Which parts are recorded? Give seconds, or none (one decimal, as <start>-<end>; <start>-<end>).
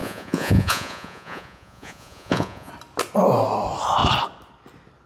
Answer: 2.7-5.1